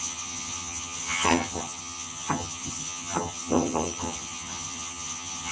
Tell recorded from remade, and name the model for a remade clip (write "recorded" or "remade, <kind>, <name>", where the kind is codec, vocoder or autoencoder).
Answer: remade, vocoder, HiFi-GAN